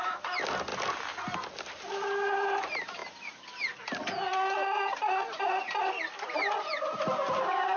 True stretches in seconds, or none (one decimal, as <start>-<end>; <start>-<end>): 0.0-7.8